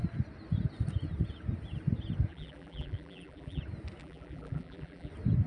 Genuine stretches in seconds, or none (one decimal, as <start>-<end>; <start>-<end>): 0.0-2.3; 3.6-4.0; 5.1-5.5